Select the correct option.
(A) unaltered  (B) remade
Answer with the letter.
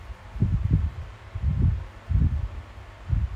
A